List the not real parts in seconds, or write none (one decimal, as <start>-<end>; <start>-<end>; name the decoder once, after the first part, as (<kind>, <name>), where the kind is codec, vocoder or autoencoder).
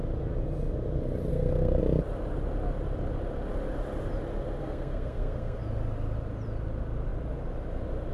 1.3-1.8 (codec, SNAC); 4.6-5.6